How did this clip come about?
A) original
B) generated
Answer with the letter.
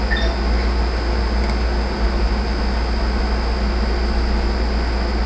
A